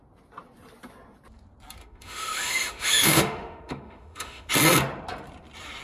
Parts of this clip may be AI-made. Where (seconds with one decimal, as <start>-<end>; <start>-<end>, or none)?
1.8-4.5